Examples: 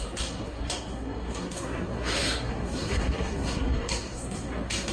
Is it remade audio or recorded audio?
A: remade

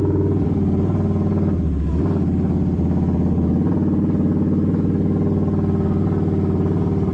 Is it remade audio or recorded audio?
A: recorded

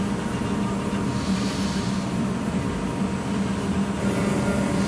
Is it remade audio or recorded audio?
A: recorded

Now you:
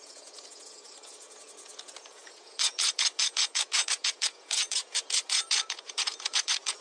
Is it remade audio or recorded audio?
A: remade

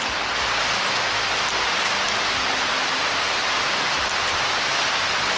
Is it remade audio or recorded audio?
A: remade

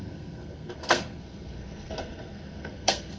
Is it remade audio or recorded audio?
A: remade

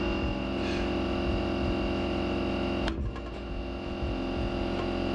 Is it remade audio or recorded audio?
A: recorded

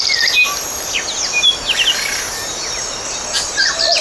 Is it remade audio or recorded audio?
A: recorded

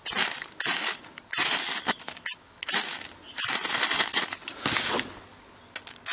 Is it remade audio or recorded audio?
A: recorded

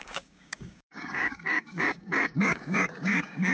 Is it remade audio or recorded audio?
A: remade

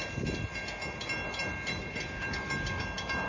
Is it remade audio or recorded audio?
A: recorded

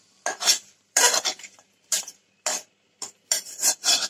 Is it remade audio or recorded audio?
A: remade